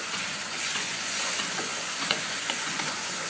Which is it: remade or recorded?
remade